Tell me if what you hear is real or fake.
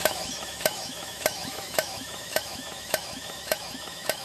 fake